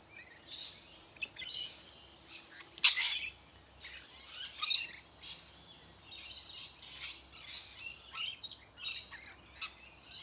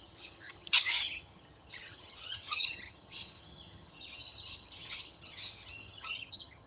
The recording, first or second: first